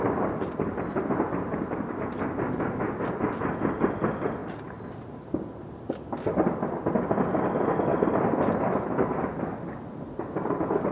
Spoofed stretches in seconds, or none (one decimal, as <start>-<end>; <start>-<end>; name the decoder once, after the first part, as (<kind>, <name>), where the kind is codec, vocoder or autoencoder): none